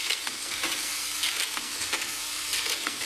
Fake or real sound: fake